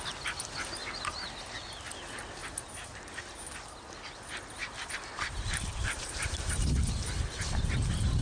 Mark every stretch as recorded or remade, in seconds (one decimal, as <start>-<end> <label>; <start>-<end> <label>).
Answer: 0.0-2.4 recorded; 2.4-3.2 remade; 3.2-4.6 recorded; 4.6-6.8 remade; 6.8-8.2 recorded